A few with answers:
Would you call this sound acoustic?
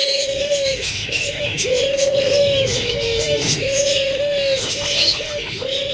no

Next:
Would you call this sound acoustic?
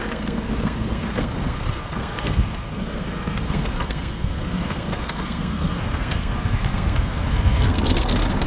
no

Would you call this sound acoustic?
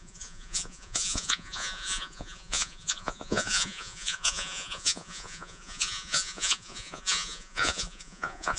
no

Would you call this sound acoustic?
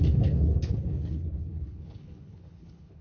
no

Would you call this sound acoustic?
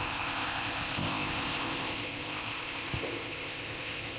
no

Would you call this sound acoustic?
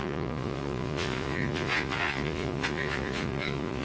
no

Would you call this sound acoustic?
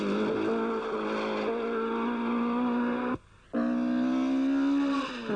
yes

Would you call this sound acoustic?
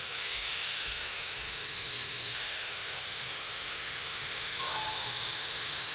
no